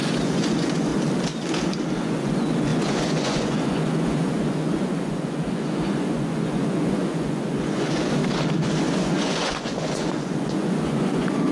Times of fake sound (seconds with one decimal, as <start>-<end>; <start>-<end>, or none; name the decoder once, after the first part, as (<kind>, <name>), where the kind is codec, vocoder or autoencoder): 0.0-0.9 (vocoder, Vocos); 2.0-8.2; 8.8-11.5